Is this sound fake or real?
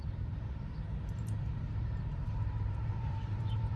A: fake